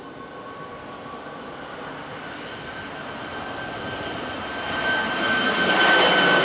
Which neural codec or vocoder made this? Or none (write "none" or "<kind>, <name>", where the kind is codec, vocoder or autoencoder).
none